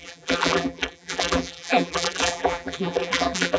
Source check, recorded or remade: remade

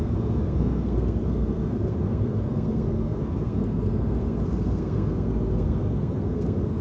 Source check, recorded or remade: remade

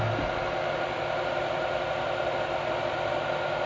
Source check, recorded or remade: recorded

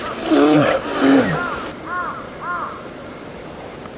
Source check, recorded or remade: recorded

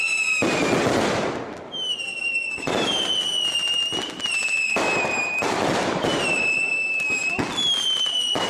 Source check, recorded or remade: recorded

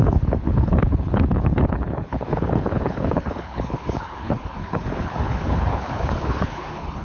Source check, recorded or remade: remade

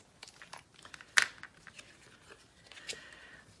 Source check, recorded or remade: recorded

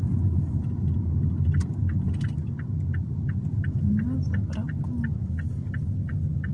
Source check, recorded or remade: recorded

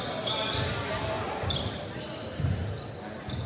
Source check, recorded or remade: recorded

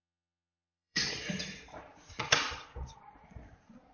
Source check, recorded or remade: remade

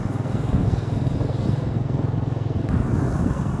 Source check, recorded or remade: remade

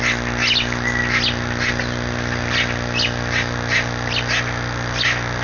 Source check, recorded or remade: recorded